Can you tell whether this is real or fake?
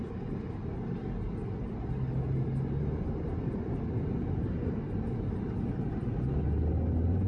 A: real